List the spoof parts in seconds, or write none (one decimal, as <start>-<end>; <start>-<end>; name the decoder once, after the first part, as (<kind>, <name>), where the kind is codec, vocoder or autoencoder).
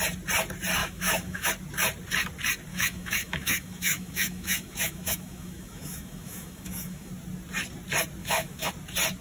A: 0.8-1.5 (autoencoder, DAC-VAE); 2.7-7.1; 8.2-8.7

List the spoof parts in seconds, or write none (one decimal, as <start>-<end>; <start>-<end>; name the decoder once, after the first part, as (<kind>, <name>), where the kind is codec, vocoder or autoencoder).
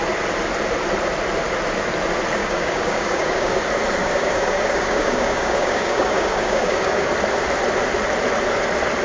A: 2.4-3.6 (codec, DAC); 4.0-7.1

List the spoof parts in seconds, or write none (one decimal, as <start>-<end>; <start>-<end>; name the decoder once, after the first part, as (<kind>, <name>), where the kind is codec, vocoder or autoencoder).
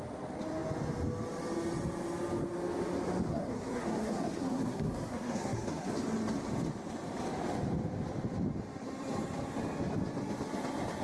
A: 3.3-5.9 (codec, SNAC)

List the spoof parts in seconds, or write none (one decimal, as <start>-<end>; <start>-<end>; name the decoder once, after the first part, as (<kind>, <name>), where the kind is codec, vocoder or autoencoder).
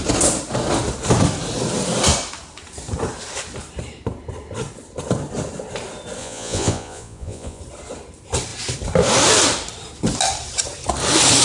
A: 6.2-7.6 (vocoder, Vocos)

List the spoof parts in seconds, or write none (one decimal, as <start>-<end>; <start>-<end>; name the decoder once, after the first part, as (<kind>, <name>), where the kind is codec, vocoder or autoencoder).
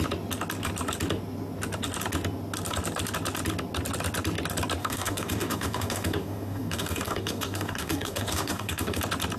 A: 4.8-9.0 (codec, DAC)